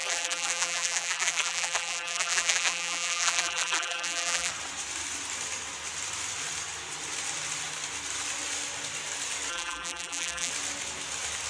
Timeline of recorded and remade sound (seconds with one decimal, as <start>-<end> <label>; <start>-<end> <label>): 0.0-4.5 remade; 4.5-9.5 recorded; 9.5-10.5 remade; 10.5-11.5 recorded